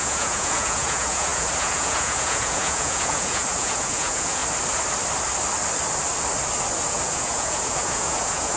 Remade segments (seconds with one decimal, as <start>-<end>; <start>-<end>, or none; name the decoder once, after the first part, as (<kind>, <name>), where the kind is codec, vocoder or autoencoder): 0.0-4.4 (vocoder, Vocos); 6.9-8.6